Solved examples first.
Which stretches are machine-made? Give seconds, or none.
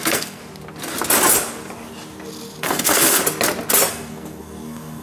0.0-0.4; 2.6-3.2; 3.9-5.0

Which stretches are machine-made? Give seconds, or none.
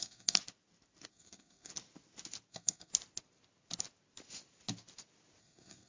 0.0-0.4; 1.1-1.7; 2.5-2.9; 5.4-5.9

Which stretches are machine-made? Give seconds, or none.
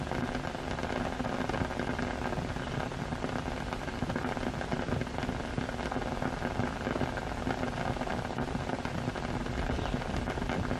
none